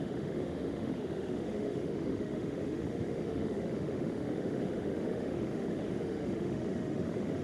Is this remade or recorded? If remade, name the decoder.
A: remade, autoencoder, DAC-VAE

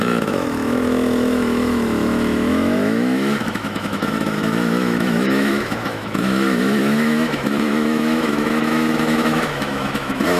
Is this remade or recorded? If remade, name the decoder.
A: remade, autoencoder, DAC-VAE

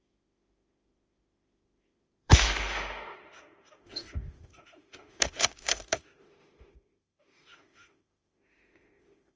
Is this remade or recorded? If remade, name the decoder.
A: remade, autoencoder, DAC-VAE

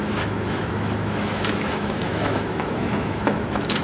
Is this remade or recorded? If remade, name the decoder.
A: remade, autoencoder, DAC-VAE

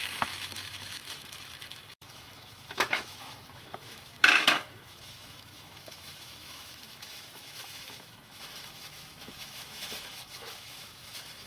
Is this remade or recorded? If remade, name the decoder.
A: remade, autoencoder, DAC-VAE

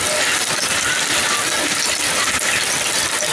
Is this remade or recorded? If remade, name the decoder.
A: recorded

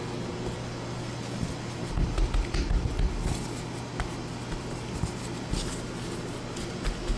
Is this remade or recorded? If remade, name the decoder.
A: recorded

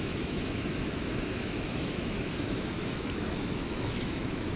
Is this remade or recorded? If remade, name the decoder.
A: remade, autoencoder, DAC-VAE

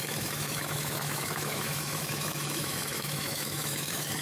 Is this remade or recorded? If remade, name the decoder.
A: remade, autoencoder, DAC-VAE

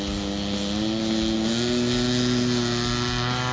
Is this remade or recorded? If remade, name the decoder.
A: recorded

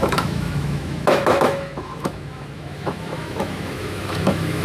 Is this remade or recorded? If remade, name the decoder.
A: remade, autoencoder, DAC-VAE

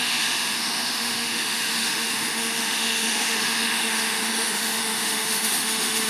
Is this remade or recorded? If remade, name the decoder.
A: remade, autoencoder, DAC-VAE